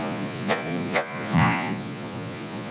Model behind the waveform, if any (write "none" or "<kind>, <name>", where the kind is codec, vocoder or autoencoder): vocoder, Vocos